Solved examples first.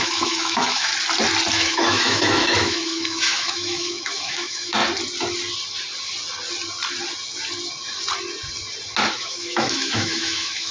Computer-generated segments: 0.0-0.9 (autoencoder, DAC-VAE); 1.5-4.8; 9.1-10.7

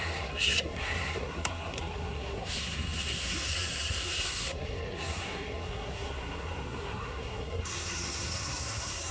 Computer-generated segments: 0.0-9.1 (codec, SNAC)

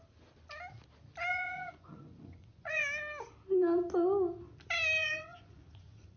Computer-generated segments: 1.3-2.8 (vocoder, Vocos); 5.0-6.2

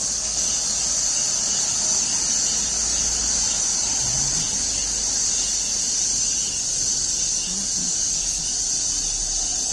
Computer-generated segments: 7.8-8.5 (codec, DAC)

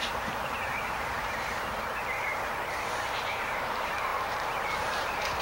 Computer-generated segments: 0.0-5.4 (vocoder, BigVGAN v2)